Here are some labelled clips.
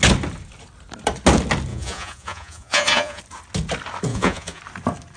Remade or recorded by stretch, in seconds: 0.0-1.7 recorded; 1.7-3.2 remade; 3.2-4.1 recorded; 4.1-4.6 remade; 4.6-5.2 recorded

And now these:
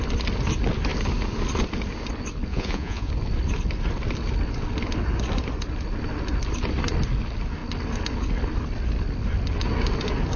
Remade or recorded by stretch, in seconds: 0.0-2.5 recorded; 2.5-3.1 remade; 3.1-10.4 recorded

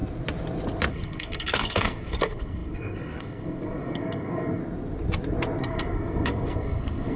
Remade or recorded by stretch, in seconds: 0.0-0.9 recorded; 0.9-4.6 remade; 4.6-5.6 recorded; 5.6-7.2 remade